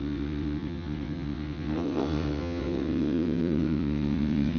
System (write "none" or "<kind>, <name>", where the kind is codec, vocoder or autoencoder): vocoder, WaveNeXt